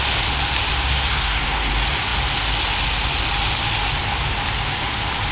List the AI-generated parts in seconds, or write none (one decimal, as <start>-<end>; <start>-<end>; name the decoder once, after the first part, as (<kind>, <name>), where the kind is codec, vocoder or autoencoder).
1.1-1.7 (codec, SNAC)